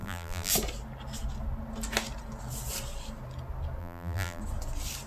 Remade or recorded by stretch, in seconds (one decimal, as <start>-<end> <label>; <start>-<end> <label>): 0.0-0.5 remade; 0.5-3.8 recorded; 3.8-4.4 remade; 4.4-5.1 recorded